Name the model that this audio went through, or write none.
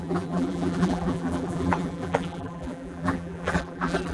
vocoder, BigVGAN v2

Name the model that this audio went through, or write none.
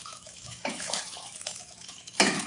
autoencoder, DAC-VAE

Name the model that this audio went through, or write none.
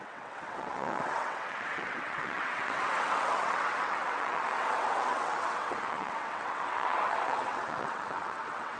vocoder, WaveNeXt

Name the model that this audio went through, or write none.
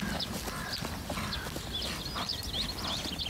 none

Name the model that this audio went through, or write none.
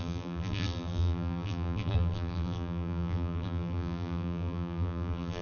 vocoder, BigVGAN v2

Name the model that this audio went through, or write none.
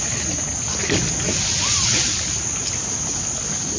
none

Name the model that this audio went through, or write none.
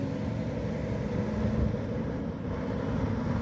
none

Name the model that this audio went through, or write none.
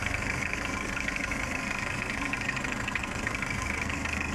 codec, SNAC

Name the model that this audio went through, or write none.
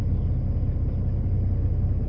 none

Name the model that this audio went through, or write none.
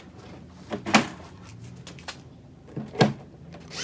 none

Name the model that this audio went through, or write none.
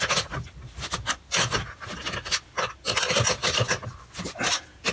none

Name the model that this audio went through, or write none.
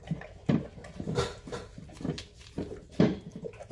none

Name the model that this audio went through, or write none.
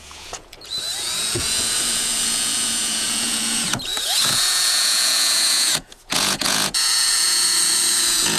vocoder, Vocos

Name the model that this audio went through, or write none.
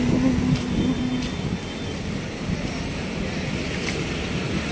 none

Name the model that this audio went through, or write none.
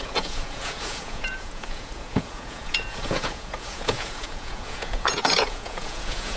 vocoder, Vocos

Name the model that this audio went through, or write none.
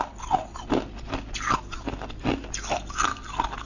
none